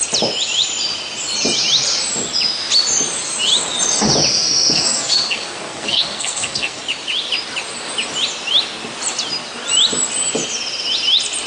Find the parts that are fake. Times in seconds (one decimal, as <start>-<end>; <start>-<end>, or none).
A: 4.3-6.8